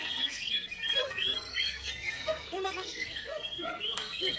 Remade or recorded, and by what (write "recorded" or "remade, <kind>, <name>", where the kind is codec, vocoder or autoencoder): remade, codec, SNAC